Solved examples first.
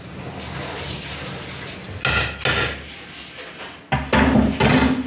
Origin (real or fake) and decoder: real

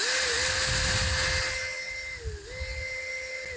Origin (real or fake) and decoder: real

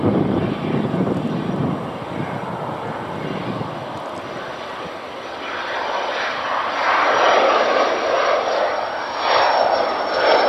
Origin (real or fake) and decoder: real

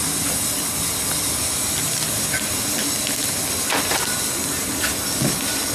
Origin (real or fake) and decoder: real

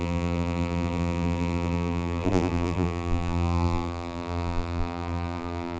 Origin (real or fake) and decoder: fake, vocoder, BigVGAN v2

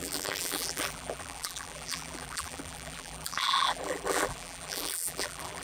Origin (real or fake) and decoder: fake, vocoder, BigVGAN v2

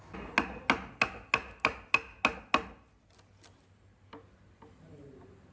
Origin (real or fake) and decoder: real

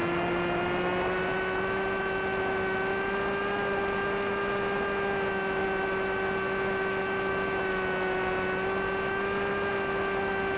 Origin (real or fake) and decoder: real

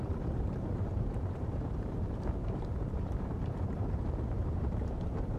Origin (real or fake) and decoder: fake, vocoder, BigVGAN v2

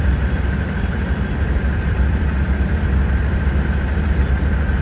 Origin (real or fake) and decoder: fake, vocoder, BigVGAN v2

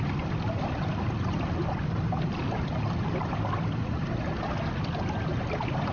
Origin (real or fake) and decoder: real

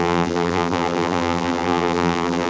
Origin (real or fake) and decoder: fake, vocoder, BigVGAN v2